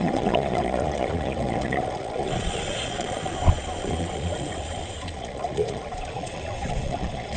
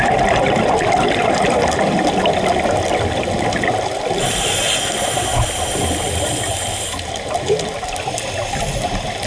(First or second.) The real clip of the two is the second